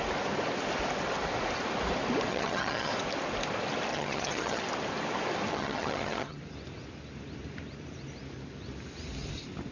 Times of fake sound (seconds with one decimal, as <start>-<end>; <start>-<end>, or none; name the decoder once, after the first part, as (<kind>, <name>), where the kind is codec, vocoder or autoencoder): 2.3-2.9 (vocoder, HiFi-GAN); 3.9-4.6; 5.5-6.4